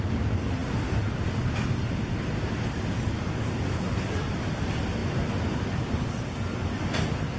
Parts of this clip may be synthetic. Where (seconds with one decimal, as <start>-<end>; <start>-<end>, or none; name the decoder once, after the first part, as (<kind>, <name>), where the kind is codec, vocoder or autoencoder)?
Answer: none